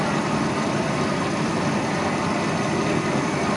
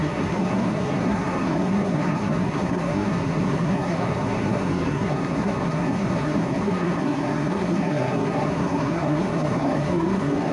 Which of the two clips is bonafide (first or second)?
first